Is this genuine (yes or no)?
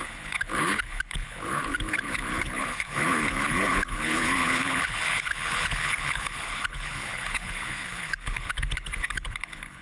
no